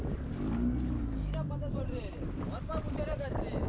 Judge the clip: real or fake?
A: fake